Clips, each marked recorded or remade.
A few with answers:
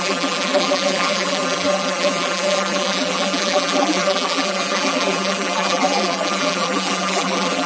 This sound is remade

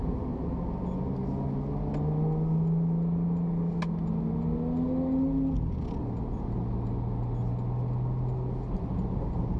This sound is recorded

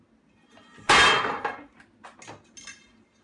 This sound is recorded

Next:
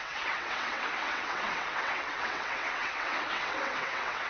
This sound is remade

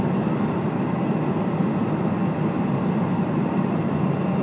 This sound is recorded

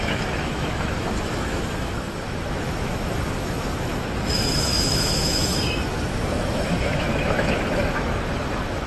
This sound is remade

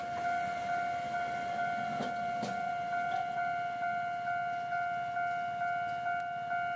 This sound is recorded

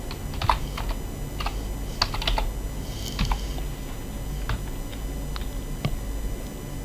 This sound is recorded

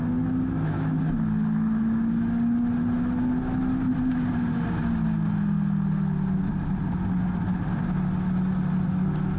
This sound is recorded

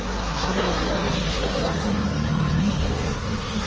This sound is remade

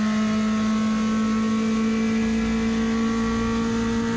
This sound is recorded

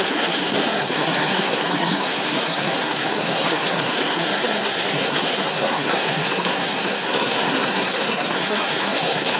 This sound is remade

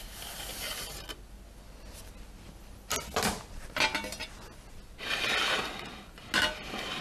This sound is recorded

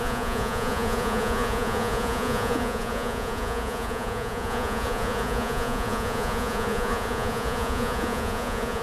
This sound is remade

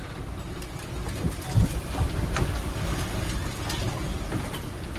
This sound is recorded